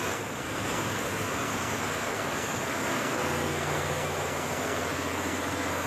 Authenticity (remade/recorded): remade